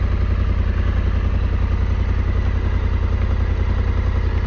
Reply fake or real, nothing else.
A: real